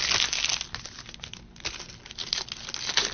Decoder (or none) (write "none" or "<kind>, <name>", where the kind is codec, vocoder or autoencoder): none